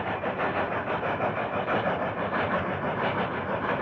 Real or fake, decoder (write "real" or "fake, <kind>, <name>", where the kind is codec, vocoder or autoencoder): real